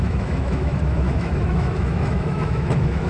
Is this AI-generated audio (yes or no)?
yes